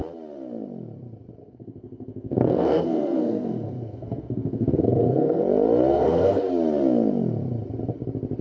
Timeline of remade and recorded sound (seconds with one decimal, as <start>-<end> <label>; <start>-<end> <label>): 0.0-1.4 recorded; 1.4-5.4 remade; 5.4-5.9 recorded; 5.9-6.5 remade; 6.5-8.4 recorded